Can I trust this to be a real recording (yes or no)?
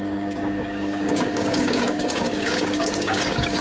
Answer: no